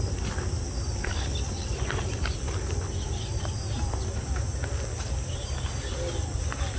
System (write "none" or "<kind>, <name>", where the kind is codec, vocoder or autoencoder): none